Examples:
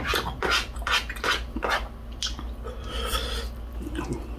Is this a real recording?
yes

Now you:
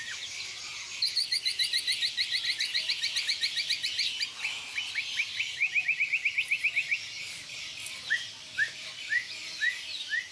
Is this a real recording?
yes